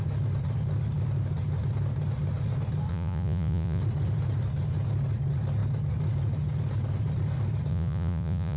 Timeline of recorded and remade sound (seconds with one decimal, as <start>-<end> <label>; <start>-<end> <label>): 0.0-2.9 recorded; 2.9-3.8 remade; 3.8-7.7 recorded; 7.7-8.6 remade